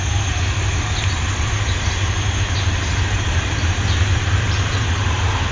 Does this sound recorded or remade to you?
remade